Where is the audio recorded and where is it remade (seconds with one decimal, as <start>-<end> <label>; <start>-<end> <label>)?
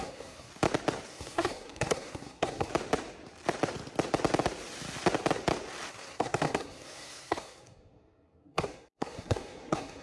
0.0-0.5 remade; 0.5-1.1 recorded; 1.1-2.7 remade; 2.7-5.9 recorded; 5.9-10.0 remade